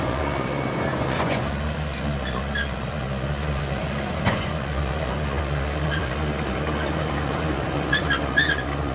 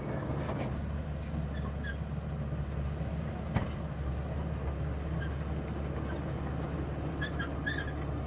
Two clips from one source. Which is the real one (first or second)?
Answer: second